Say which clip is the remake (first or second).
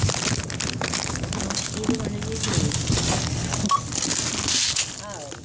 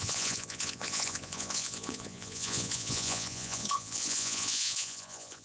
second